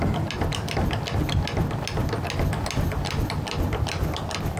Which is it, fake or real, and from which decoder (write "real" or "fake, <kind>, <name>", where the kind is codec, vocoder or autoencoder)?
real